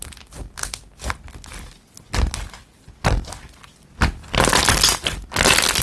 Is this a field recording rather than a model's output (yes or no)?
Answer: yes